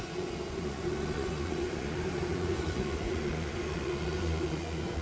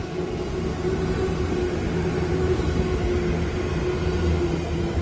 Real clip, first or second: second